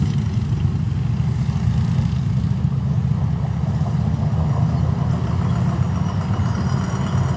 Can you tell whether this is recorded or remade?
recorded